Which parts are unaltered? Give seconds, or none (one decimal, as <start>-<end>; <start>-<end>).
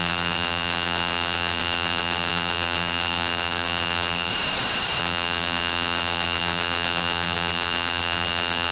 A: 4.3-5.0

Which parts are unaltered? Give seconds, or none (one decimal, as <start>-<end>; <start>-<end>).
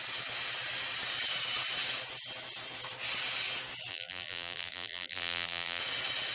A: 0.0-3.9; 5.8-6.3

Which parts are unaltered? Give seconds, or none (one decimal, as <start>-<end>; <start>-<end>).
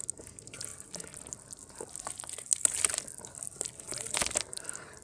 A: 0.0-5.0